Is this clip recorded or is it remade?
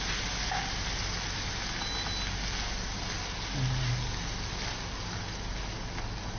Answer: recorded